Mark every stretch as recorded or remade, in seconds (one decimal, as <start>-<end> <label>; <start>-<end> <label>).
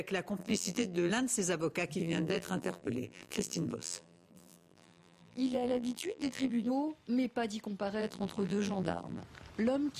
0.0-0.4 recorded; 0.4-1.1 remade; 1.1-2.0 recorded; 2.0-6.7 remade; 6.7-8.0 recorded; 8.0-9.2 remade; 9.2-10.0 recorded